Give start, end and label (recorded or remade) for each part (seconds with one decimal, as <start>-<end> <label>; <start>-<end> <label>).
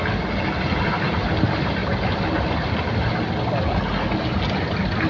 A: 0.0-5.1 recorded